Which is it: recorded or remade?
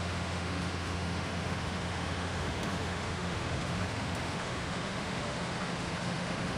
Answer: remade